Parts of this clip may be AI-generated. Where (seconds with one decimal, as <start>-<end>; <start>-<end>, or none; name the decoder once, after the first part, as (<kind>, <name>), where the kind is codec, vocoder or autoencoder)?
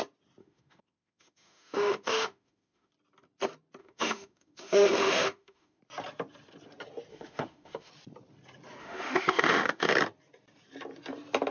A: 0.4-2.9 (autoencoder, DAC-VAE); 3.8-5.8; 7.1-7.9; 8.8-9.9